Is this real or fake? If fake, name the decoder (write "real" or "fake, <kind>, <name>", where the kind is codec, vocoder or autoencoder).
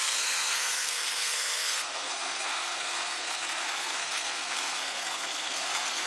fake, codec, SNAC